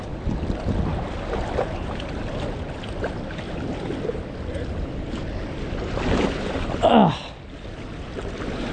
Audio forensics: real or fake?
real